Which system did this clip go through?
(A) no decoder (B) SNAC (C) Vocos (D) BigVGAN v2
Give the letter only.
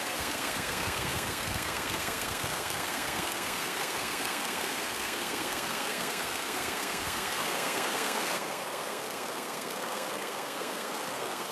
B